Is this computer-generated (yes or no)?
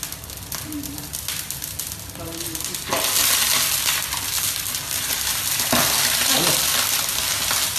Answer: no